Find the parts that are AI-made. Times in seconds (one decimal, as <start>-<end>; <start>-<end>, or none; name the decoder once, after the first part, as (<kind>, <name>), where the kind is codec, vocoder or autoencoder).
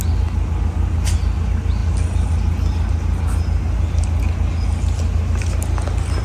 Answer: none